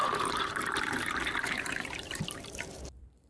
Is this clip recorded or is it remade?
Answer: remade